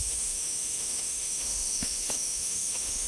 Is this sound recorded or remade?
remade